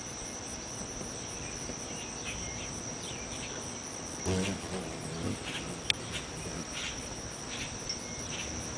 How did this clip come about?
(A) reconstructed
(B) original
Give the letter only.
B